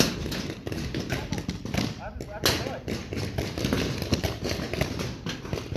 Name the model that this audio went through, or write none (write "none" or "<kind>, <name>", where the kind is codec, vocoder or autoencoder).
none